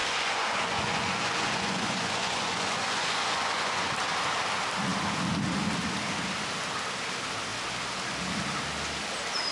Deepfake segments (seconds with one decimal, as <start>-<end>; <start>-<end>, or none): 0.0-3.9